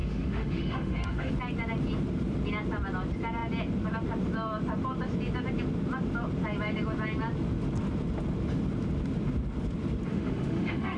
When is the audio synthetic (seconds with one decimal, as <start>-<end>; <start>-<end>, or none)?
0.0-1.3; 10.1-11.0